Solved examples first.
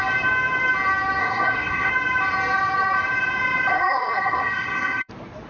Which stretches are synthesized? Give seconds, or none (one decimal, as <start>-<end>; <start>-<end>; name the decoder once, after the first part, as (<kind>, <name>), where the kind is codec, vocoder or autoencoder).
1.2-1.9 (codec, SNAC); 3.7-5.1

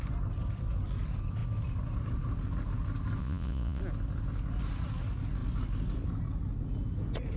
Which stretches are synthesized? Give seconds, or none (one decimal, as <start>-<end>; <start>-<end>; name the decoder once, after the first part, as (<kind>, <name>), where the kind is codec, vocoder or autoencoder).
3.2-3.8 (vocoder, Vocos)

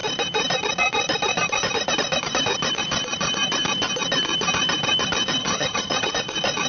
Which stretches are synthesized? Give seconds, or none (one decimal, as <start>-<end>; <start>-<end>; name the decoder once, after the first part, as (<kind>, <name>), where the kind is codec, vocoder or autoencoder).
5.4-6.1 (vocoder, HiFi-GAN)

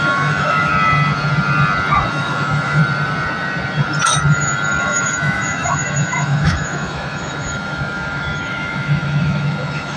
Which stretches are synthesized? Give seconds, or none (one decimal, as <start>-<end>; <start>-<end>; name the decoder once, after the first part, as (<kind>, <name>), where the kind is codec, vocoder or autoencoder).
0.0-0.7 (autoencoder, DAC-VAE); 2.1-2.8; 4.8-10.0

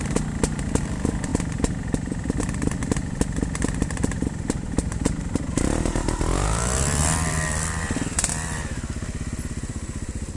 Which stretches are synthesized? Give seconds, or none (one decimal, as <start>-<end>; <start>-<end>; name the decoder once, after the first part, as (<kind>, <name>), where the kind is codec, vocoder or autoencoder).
0.0-1.3 (vocoder, BigVGAN v2); 2.4-10.4

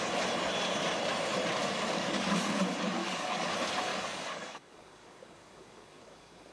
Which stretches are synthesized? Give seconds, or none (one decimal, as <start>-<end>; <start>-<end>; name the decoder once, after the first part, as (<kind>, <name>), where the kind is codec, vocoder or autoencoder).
1.6-2.6 (codec, DAC); 3.0-3.5; 3.9-6.5

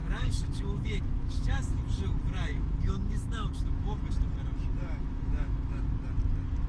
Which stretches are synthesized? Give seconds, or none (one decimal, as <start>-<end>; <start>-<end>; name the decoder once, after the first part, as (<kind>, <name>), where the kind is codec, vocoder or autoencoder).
0.0-1.8 (autoencoder, DAC-VAE); 2.5-4.1; 4.8-5.8

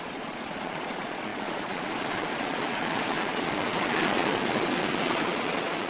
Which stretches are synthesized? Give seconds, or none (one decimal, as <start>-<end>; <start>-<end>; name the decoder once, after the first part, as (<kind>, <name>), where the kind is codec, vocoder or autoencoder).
0.0-5.9 (vocoder, Vocos)